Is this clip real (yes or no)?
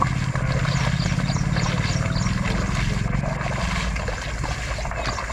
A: yes